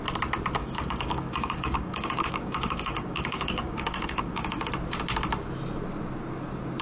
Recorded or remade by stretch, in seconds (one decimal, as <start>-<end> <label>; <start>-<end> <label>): 0.0-0.6 recorded; 0.6-4.7 remade; 4.7-6.8 recorded